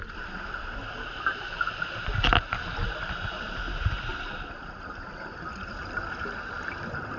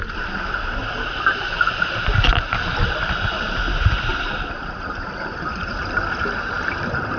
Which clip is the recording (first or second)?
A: first